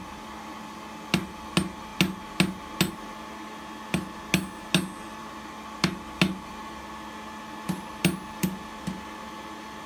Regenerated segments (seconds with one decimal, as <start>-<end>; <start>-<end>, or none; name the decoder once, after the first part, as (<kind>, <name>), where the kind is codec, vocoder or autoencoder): none

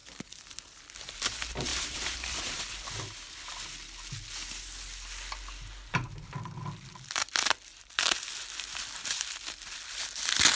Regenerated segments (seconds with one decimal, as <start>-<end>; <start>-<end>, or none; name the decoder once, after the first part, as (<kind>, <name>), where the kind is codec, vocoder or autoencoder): 0.0-0.8 (vocoder, BigVGAN v2); 1.7-2.6

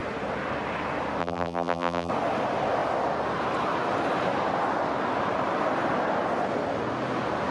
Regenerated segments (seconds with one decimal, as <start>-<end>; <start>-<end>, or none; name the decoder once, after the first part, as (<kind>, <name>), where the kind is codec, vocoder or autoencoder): 1.2-2.1 (vocoder, BigVGAN v2)